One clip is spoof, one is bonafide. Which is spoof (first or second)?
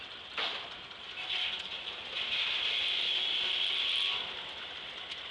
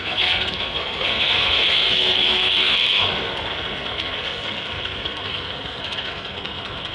second